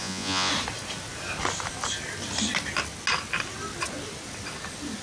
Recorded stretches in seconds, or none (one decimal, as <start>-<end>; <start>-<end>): 0.5-5.0